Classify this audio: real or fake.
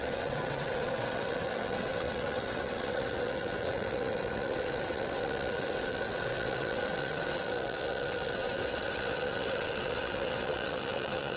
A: fake